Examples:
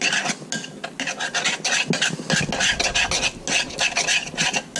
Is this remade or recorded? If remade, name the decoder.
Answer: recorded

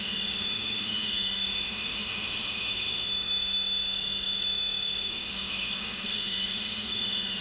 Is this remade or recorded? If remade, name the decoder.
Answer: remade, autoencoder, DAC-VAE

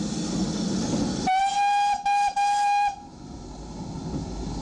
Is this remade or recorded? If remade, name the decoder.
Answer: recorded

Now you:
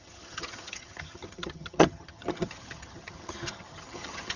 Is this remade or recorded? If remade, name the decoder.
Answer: remade, vocoder, HiFi-GAN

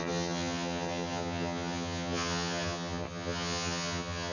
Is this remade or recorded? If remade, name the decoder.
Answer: remade, vocoder, HiFi-GAN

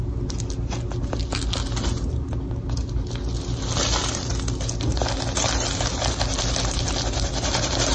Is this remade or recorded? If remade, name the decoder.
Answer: recorded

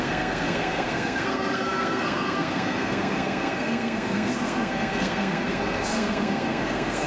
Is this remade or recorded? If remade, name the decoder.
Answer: remade, codec, SNAC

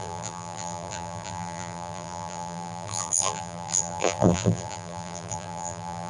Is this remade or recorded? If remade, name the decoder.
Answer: remade, vocoder, BigVGAN v2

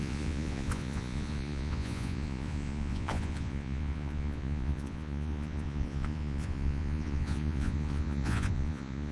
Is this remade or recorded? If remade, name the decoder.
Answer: remade, vocoder, Vocos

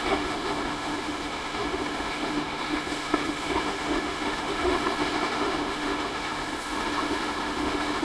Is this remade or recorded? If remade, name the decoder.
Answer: remade, autoencoder, DAC-VAE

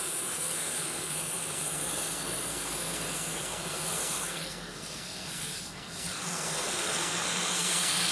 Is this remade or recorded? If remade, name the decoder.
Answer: remade, codec, SNAC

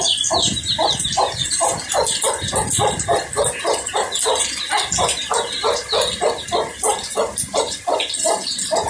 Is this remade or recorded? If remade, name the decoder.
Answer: recorded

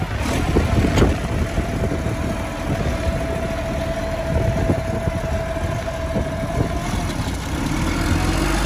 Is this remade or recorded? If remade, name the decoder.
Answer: recorded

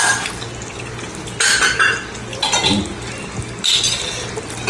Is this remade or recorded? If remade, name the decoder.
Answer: recorded